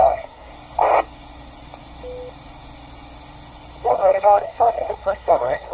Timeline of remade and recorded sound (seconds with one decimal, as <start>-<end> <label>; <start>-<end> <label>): 0.0-0.5 remade; 0.5-3.9 recorded; 3.9-5.7 remade